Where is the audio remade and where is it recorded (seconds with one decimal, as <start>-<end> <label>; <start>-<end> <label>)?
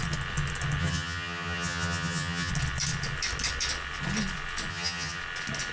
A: 0.0-0.8 recorded; 0.8-2.5 remade; 2.5-4.7 recorded; 4.7-5.2 remade; 5.2-5.7 recorded